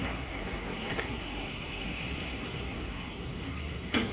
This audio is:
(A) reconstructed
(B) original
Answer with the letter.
A